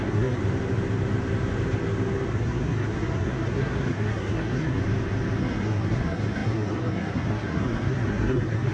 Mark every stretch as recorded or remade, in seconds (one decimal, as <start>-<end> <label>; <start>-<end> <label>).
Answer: 0.0-0.4 remade; 0.4-2.3 recorded; 2.3-4.8 remade; 4.8-5.4 recorded; 5.4-8.7 remade